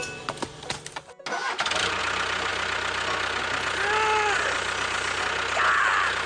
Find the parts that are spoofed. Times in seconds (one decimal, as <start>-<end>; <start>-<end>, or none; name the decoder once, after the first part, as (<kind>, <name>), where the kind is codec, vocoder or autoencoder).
1.4-2.0 (vocoder, BigVGAN v2)